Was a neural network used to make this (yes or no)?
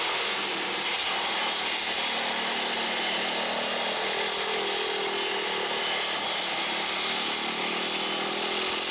no